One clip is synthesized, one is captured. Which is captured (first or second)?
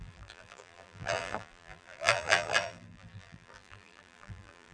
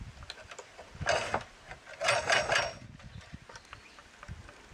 second